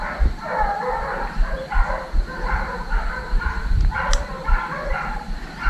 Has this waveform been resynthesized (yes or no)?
no